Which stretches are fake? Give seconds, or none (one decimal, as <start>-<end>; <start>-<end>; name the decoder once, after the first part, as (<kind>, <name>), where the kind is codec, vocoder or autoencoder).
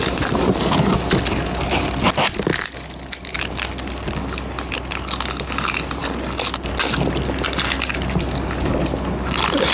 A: none